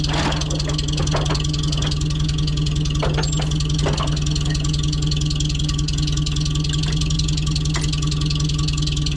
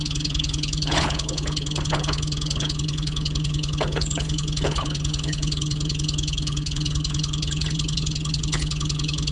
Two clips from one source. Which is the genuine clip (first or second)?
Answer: first